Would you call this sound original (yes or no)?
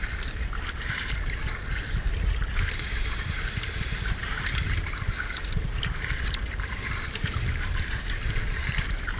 no